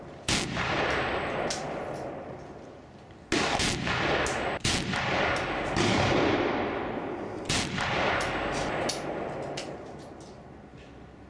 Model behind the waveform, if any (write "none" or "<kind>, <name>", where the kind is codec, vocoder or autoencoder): none